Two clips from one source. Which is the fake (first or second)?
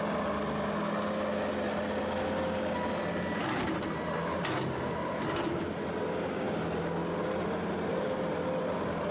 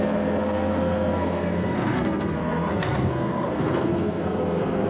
second